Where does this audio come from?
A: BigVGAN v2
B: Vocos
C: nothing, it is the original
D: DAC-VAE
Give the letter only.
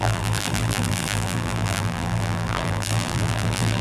A